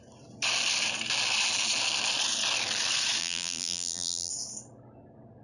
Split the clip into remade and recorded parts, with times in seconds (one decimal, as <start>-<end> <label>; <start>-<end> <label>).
0.0-3.2 recorded; 3.2-4.3 remade; 4.3-5.4 recorded